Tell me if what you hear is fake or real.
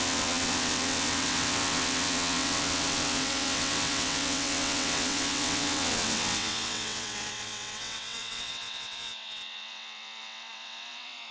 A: fake